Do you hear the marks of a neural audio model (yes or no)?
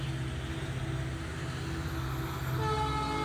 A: no